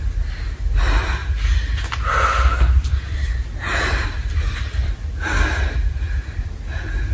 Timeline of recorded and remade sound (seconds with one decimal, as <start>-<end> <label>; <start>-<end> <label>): 0.0-2.8 recorded; 2.8-6.5 remade; 6.5-7.1 recorded

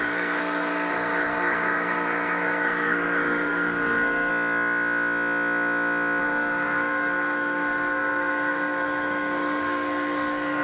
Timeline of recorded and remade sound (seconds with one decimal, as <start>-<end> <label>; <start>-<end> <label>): 0.0-4.3 remade; 4.3-6.2 recorded; 6.2-10.6 remade